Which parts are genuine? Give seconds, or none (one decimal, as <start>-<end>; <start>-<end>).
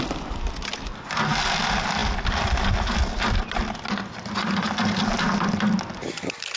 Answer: 0.0-6.6